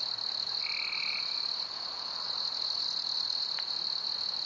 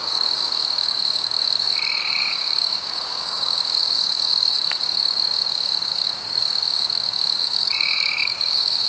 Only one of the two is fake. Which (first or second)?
second